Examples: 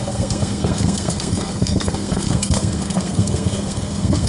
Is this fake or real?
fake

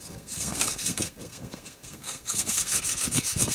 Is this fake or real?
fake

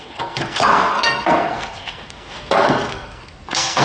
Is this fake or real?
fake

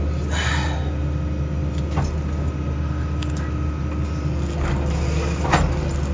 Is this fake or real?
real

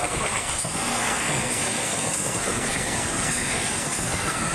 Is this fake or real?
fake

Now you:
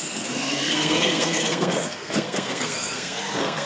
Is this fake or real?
fake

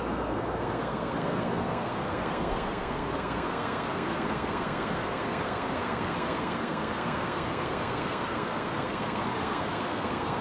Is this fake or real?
fake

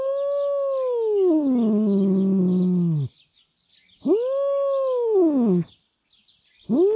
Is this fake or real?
real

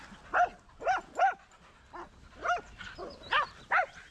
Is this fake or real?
real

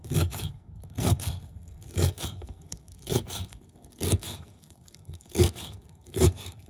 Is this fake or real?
fake